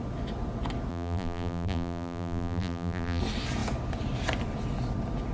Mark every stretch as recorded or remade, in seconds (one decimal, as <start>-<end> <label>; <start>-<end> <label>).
0.0-0.9 recorded; 0.9-3.2 remade; 3.2-5.3 recorded